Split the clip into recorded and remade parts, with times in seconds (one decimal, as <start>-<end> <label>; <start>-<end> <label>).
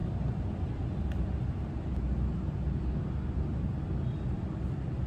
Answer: 0.0-1.3 remade; 1.3-5.1 recorded